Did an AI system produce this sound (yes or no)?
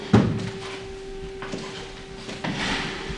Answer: no